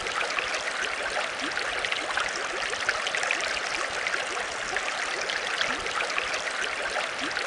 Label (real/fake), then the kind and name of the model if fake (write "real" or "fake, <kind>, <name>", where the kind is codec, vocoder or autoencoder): real